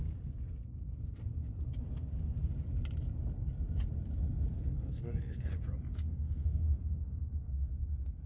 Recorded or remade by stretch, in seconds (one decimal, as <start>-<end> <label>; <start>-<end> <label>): 0.0-4.7 recorded; 4.7-5.5 remade; 5.5-5.9 recorded; 5.9-7.7 remade; 7.7-8.3 recorded

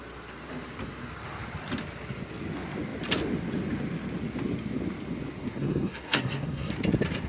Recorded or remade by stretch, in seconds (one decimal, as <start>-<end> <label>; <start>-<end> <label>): 0.0-5.4 recorded; 5.4-6.7 remade; 6.7-7.3 recorded

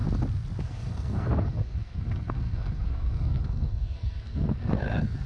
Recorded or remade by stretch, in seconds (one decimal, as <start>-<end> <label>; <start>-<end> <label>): 0.0-0.6 recorded; 0.6-5.3 remade

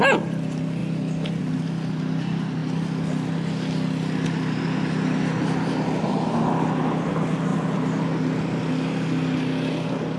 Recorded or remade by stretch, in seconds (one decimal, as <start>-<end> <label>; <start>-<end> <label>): 0.0-10.2 recorded